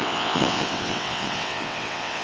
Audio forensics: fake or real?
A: fake